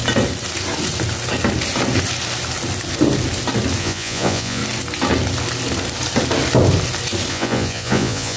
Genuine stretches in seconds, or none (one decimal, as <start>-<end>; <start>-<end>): 0.0-3.8; 4.6-7.3